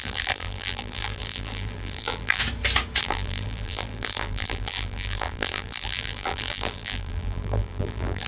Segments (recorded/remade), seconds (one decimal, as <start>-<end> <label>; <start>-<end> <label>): 0.0-2.4 remade; 2.4-3.0 recorded; 3.0-8.3 remade